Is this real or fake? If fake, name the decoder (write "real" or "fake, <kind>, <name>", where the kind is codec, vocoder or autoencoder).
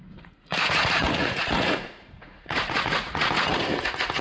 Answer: fake, vocoder, Vocos